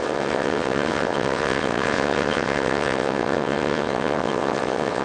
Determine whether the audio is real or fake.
fake